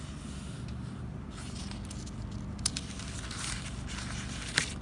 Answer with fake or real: real